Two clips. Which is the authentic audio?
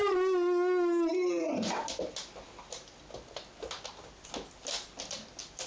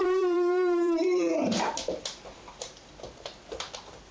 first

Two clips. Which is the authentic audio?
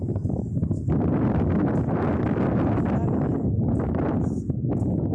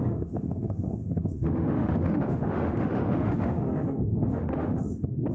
first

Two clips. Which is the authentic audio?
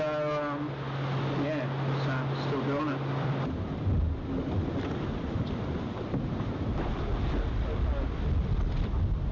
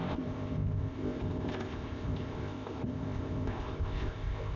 first